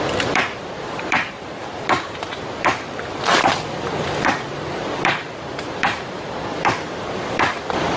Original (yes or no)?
no